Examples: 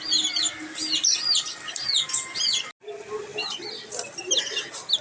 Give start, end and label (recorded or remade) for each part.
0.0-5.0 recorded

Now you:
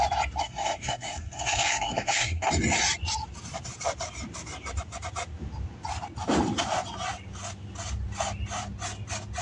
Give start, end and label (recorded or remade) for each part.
0.0-0.4 recorded; 0.4-2.5 remade; 2.5-9.4 recorded

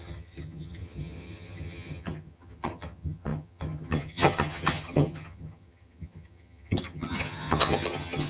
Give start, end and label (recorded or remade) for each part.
0.0-8.3 remade

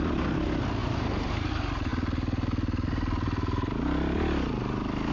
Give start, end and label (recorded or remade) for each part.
0.0-0.8 recorded; 0.8-1.5 remade; 1.5-5.1 recorded

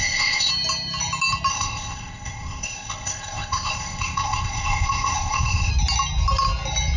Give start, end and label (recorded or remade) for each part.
0.0-0.5 remade; 0.5-1.5 recorded; 1.5-5.7 remade; 5.7-7.0 recorded

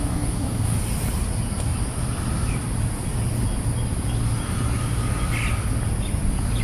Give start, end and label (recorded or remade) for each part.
0.0-0.8 remade; 0.8-6.6 recorded